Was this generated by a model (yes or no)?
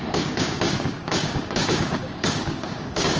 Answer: yes